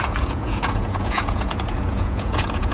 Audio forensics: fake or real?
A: fake